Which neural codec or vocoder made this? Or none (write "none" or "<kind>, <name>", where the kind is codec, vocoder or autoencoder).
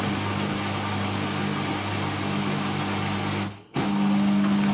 none